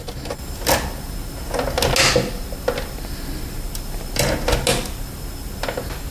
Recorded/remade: recorded